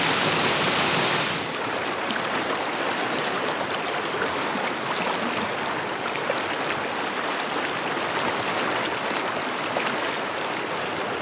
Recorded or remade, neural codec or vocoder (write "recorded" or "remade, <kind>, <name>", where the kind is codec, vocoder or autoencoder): recorded